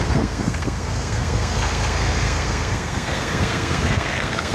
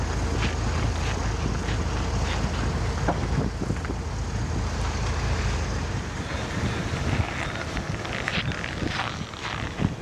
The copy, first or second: first